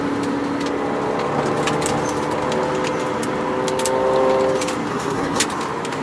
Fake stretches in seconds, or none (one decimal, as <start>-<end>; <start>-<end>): 4.9-5.4

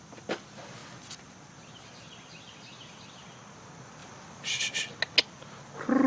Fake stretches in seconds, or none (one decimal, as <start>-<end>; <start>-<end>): none

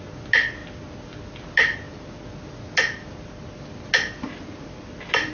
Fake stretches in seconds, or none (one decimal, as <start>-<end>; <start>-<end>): none

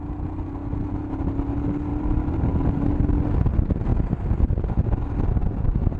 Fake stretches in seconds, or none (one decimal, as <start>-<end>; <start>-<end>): 1.9-3.2

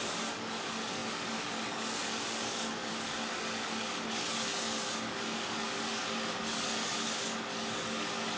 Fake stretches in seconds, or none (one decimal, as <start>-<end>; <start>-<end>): 0.0-8.4

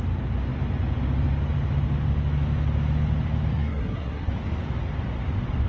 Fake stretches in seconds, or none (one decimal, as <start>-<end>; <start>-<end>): 3.5-4.3